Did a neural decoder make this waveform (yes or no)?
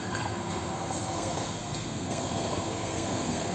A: yes